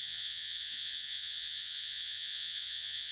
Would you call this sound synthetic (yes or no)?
yes